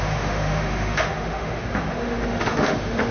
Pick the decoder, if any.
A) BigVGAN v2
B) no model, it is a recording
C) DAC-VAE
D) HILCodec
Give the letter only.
C